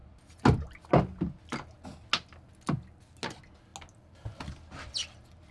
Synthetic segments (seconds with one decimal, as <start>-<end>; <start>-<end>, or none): none